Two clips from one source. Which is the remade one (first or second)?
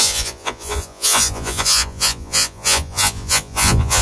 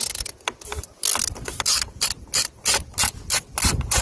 first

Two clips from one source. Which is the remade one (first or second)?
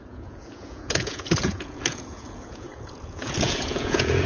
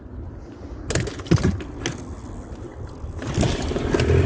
first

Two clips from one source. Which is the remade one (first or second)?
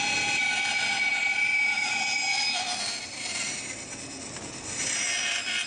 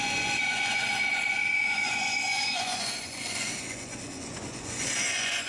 second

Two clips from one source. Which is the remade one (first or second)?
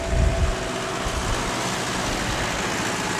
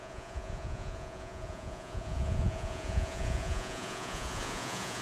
second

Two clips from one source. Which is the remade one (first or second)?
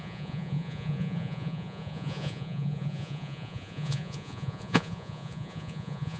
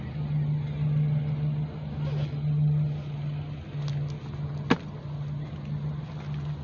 first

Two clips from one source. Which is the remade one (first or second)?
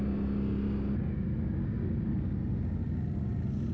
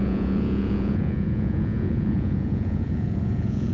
second